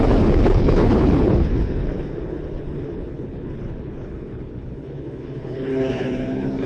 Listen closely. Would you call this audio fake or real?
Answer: fake